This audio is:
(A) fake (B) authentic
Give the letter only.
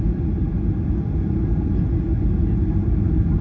B